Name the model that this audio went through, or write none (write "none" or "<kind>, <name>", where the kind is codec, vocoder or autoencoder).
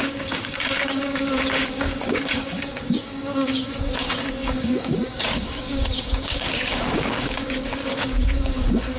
codec, DAC